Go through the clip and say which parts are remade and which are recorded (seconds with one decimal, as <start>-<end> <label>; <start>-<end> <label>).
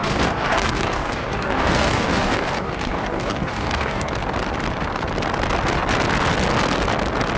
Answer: 0.0-4.1 remade; 4.1-7.4 recorded